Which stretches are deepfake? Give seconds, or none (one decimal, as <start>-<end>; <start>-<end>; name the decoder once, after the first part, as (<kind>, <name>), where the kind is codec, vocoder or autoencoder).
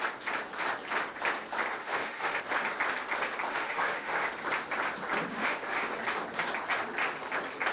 1.8-2.4 (autoencoder, DAC-VAE); 3.5-4.3; 5.3-5.9